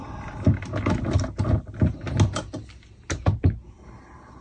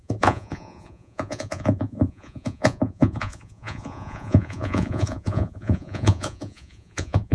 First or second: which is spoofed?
second